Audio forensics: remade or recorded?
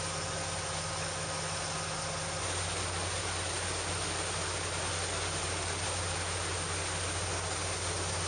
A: recorded